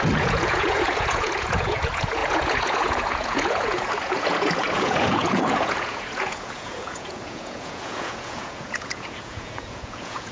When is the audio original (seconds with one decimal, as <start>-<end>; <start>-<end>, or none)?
none